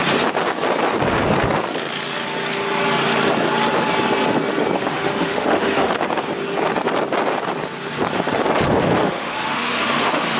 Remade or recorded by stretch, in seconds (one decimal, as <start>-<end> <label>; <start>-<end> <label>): 0.0-4.9 recorded; 4.9-5.9 remade; 5.9-9.0 recorded; 9.0-10.4 remade